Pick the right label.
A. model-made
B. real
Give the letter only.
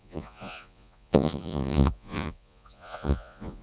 A